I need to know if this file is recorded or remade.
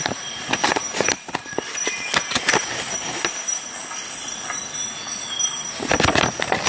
recorded